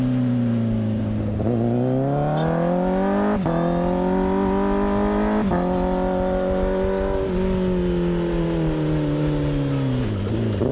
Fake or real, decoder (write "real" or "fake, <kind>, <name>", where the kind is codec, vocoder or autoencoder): real